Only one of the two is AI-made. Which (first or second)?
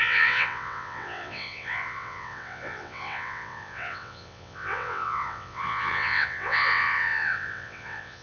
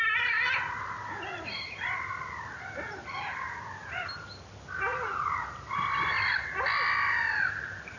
first